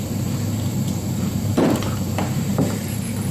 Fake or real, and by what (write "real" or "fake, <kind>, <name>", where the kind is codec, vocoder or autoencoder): fake, vocoder, BigVGAN v2